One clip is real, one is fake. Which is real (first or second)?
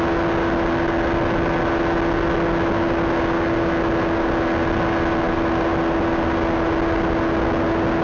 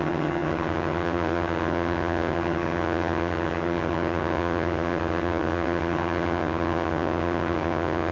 first